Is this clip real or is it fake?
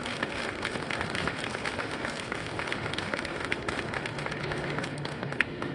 fake